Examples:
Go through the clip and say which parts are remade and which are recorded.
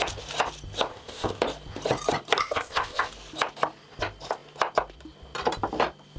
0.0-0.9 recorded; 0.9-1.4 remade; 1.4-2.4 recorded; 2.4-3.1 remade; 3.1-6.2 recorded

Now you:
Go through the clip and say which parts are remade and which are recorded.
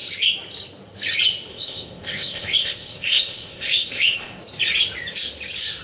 0.0-1.5 recorded; 1.5-4.4 remade; 4.4-5.8 recorded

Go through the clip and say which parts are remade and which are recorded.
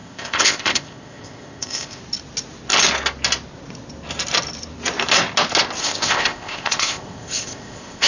0.0-2.0 remade; 2.0-5.8 recorded; 5.8-8.1 remade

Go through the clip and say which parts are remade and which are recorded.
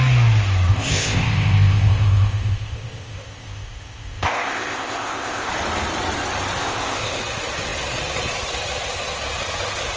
0.0-0.7 recorded; 0.7-5.5 remade; 5.5-6.6 recorded; 6.6-7.2 remade; 7.2-10.0 recorded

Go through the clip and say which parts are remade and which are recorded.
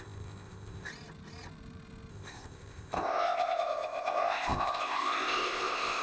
0.0-0.9 remade; 0.9-2.1 recorded; 2.1-6.0 remade